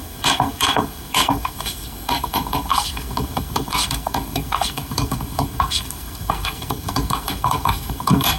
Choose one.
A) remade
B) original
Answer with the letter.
A